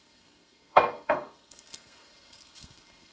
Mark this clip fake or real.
fake